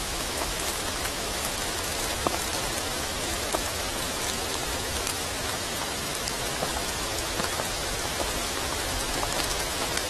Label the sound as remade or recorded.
remade